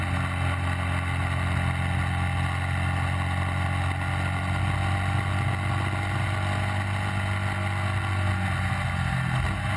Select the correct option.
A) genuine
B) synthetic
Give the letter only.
A